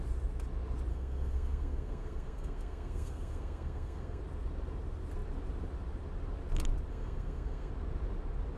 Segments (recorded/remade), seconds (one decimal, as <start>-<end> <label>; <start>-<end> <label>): 0.0-0.9 recorded; 0.9-4.2 remade; 4.2-6.9 recorded; 6.9-7.7 remade; 7.7-8.6 recorded

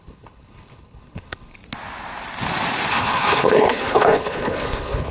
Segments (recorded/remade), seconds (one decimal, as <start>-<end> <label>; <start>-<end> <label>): 0.0-1.6 remade; 1.6-2.9 recorded; 2.9-5.1 remade

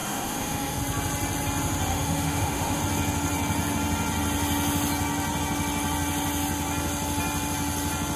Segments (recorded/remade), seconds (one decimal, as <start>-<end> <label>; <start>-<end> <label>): 0.0-0.8 remade; 0.8-1.9 recorded; 1.9-2.8 remade; 2.8-8.2 recorded